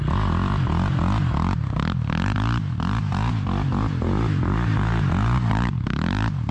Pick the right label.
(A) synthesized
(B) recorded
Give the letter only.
A